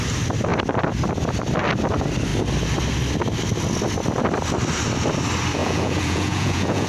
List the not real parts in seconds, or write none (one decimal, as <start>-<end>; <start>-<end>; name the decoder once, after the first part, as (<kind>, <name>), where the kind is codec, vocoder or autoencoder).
5.6-6.9 (vocoder, Vocos)